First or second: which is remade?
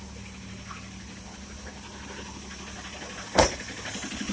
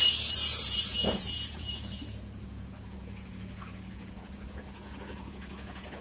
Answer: second